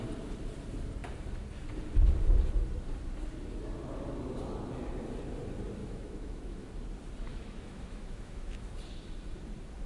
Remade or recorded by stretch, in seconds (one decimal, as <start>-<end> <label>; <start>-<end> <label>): 0.0-5.8 recorded; 5.8-6.7 remade; 6.7-7.3 recorded; 7.3-8.7 remade; 8.7-9.9 recorded